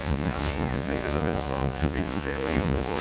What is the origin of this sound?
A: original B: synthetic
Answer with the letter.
B